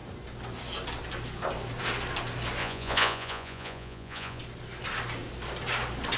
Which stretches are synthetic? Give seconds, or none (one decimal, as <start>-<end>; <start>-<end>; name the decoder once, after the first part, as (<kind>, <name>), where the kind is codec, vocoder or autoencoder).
2.6-4.4 (vocoder, Vocos)